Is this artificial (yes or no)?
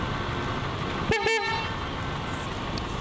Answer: no